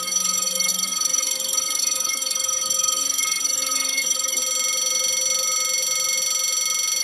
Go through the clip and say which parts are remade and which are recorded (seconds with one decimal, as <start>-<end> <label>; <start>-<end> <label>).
0.0-4.4 remade; 4.4-7.0 recorded